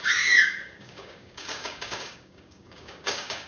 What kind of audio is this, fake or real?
fake